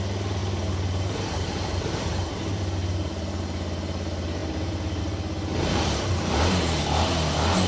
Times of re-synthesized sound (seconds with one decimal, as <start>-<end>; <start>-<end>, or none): 0.4-3.4; 4.4-5.0; 5.5-6.8